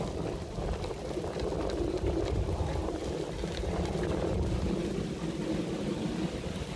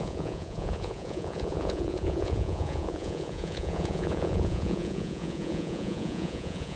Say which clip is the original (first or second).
first